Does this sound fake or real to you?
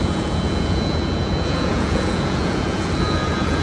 fake